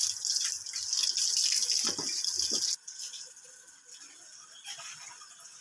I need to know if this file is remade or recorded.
recorded